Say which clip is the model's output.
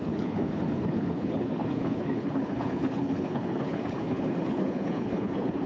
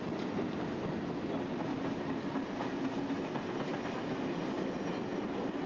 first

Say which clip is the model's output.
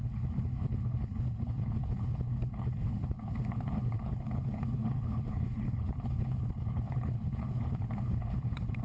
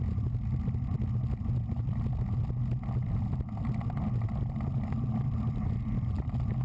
first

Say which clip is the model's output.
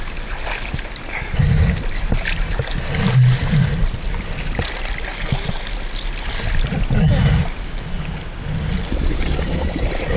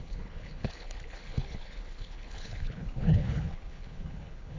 second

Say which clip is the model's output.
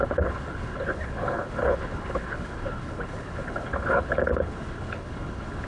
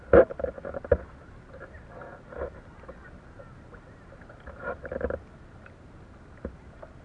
first